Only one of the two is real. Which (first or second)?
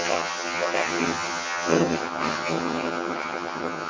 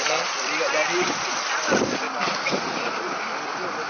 second